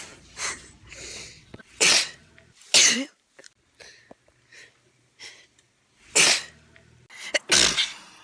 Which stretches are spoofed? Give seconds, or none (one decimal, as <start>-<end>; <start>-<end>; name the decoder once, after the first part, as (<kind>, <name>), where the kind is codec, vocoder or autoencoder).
1.1-2.3 (vocoder, WaveNeXt)